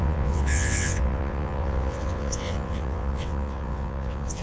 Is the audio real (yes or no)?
no